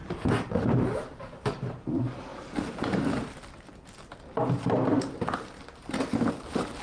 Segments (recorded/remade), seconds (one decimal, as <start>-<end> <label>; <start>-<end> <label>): 0.0-0.6 recorded; 0.6-6.8 remade